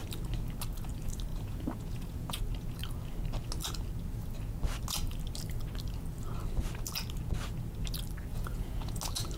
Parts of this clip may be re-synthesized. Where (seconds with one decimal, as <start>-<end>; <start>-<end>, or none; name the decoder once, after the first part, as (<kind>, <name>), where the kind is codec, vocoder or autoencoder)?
1.3-2.4 (vocoder, Vocos); 8.3-9.0